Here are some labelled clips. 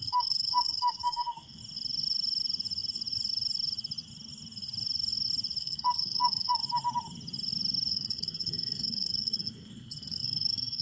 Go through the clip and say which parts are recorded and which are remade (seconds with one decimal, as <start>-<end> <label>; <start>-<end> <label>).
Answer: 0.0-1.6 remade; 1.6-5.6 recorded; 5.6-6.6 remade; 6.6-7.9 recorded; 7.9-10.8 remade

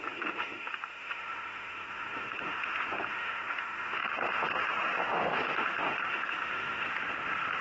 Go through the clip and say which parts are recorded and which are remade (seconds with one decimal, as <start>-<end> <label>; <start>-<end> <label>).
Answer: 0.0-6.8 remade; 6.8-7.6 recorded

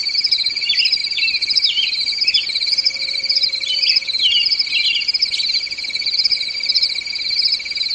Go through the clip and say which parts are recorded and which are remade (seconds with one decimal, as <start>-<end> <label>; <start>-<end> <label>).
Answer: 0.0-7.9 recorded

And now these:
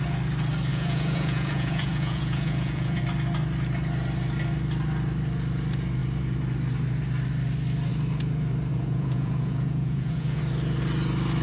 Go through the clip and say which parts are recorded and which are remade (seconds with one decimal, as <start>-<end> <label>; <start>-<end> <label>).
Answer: 0.0-0.7 recorded; 0.7-3.0 remade; 3.0-8.7 recorded; 8.7-10.4 remade; 10.4-11.4 recorded

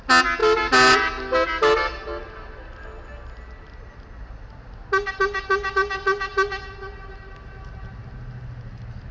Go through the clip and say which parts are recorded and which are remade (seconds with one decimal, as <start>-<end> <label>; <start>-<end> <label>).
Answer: 0.0-9.1 recorded